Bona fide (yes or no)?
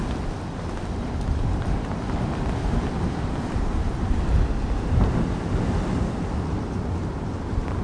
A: yes